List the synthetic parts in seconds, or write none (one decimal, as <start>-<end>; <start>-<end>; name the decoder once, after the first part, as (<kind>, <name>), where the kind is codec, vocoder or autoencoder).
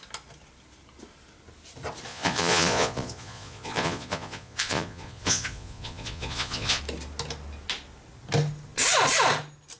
2.1-6.8 (vocoder, Vocos)